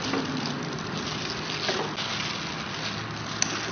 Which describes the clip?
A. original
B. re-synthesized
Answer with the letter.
A